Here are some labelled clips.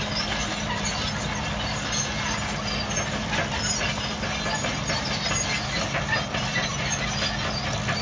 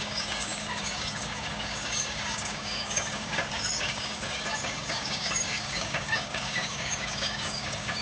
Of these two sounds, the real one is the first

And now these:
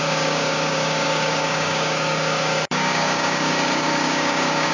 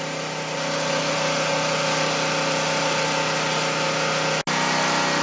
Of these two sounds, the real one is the second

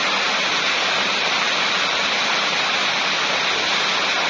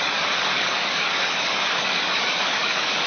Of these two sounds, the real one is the first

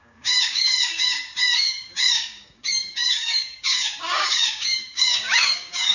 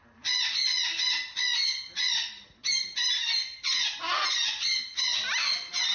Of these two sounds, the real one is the second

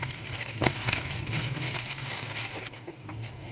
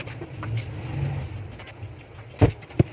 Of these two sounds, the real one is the second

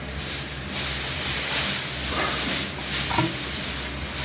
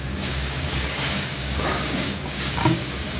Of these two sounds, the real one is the first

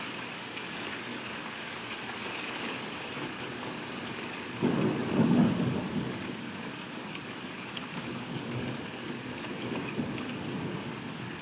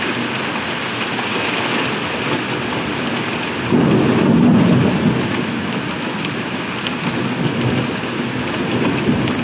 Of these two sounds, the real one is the second